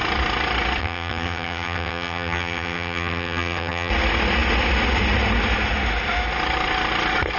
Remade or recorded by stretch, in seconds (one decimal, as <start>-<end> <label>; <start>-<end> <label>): 0.0-0.8 recorded; 0.8-3.9 remade; 3.9-7.4 recorded